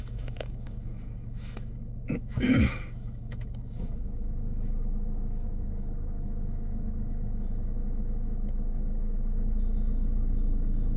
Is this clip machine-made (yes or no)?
yes